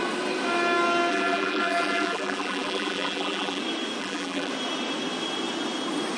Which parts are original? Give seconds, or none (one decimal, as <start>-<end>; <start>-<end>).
0.0-1.1; 3.6-4.0; 4.5-6.2